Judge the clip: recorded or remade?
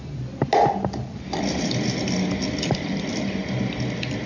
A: recorded